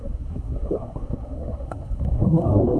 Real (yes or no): no